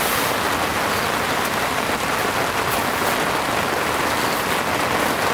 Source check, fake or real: real